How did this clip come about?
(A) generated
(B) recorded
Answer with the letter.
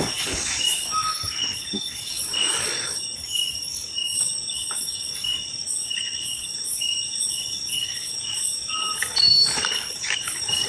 A